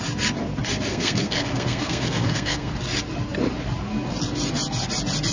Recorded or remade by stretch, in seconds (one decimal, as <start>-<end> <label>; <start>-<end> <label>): 0.0-0.9 recorded; 0.9-2.7 remade; 2.7-5.3 recorded